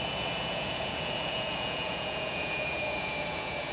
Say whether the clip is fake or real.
fake